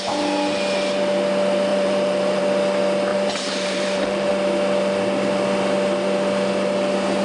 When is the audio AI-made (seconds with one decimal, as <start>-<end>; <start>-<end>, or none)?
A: 1.7-2.4; 3.1-4.3